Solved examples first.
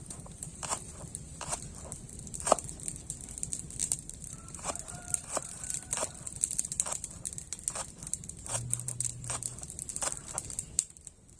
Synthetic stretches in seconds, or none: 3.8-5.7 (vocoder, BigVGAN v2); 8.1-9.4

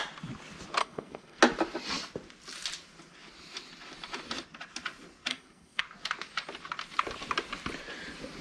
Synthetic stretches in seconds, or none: 0.8-1.4 (codec, SNAC); 5.3-5.8

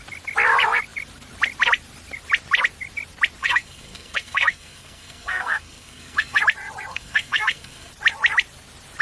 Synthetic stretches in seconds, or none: 3.4-6.4 (codec, SNAC); 6.9-7.9

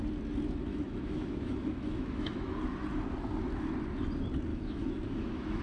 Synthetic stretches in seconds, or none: 0.7-2.6 (autoencoder, DAC-VAE); 4.5-5.6